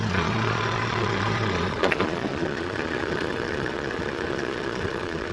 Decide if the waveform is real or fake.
fake